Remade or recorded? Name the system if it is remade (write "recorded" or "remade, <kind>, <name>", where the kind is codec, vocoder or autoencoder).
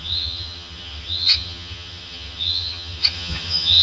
remade, vocoder, HiFi-GAN